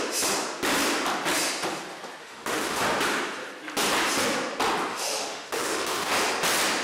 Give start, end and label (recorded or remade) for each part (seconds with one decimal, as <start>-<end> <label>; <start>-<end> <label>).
0.0-2.2 recorded; 2.2-2.8 remade; 2.8-4.9 recorded; 4.9-6.1 remade; 6.1-6.8 recorded